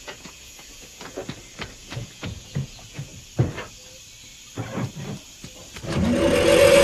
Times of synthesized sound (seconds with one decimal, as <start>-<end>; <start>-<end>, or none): 0.0-1.2; 1.8-3.1